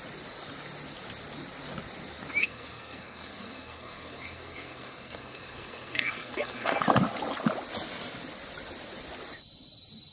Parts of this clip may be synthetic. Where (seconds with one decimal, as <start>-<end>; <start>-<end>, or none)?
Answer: 2.4-6.8